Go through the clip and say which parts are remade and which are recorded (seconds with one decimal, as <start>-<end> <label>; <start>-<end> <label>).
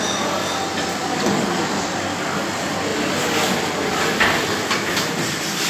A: 0.0-0.9 recorded; 0.9-1.6 remade; 1.6-5.7 recorded